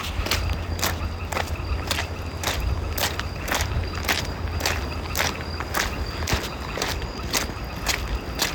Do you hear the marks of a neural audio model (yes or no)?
no